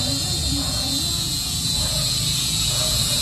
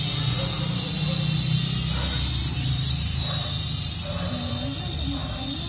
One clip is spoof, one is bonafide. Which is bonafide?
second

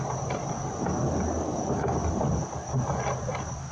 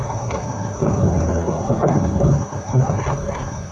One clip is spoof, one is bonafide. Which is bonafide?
first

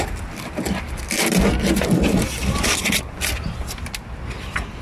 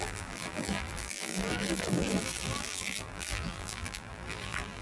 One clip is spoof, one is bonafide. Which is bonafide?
first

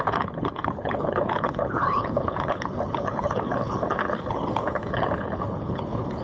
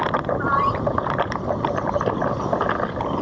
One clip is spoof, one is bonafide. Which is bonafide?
second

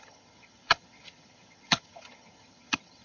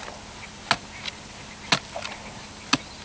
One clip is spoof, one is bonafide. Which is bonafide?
second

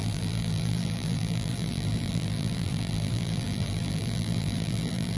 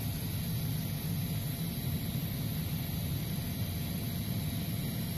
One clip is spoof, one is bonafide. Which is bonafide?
second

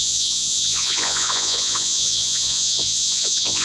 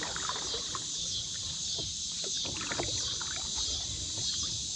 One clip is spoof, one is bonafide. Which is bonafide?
second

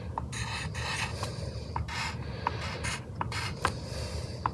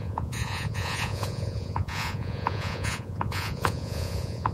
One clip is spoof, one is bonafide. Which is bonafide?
first